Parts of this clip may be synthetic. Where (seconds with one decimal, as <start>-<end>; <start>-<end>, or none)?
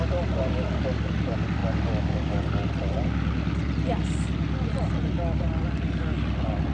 none